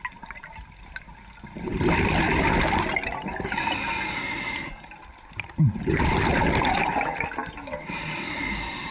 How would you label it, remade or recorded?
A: recorded